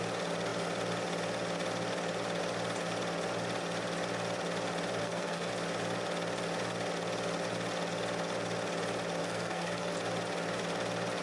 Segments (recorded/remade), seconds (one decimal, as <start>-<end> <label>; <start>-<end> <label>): 0.0-5.0 recorded; 5.0-5.5 remade; 5.5-9.2 recorded; 9.2-9.9 remade; 9.9-11.2 recorded

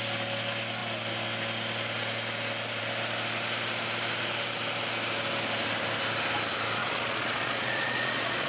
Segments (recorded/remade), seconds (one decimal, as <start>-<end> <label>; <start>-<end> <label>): 0.0-6.8 recorded; 6.8-8.5 remade

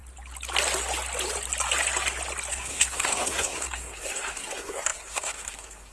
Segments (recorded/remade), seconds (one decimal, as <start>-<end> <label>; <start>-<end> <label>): 0.0-2.5 recorded; 2.5-5.9 remade

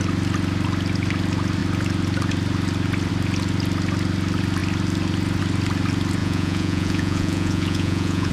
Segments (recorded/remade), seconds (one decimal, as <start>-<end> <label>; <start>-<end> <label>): 0.0-6.2 recorded; 6.2-8.3 remade

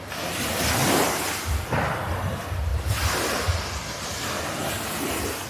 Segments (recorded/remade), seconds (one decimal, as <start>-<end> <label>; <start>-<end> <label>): 0.0-5.5 recorded

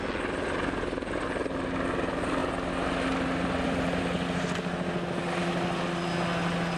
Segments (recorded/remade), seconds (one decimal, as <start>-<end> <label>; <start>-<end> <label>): 0.0-6.8 recorded

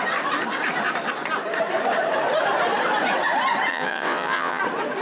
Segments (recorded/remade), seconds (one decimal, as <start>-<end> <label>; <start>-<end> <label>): 0.0-3.7 recorded; 3.7-4.6 remade; 4.6-5.0 recorded